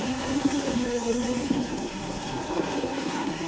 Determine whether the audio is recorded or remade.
remade